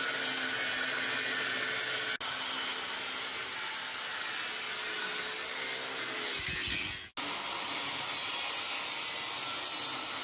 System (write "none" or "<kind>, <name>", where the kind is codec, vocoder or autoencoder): none